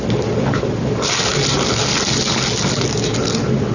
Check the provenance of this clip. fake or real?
real